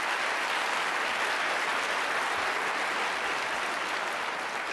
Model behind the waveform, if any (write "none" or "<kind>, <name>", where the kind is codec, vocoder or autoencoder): none